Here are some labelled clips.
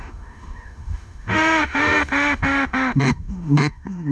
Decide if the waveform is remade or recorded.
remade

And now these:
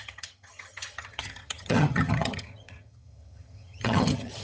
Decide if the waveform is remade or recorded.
remade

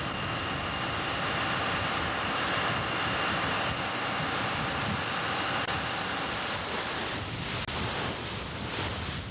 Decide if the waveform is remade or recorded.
recorded